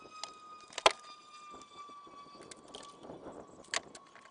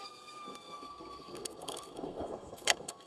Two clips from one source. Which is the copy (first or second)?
second